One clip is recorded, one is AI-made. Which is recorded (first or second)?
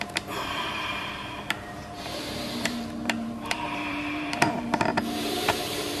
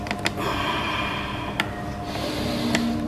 second